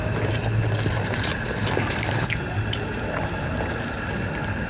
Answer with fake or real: real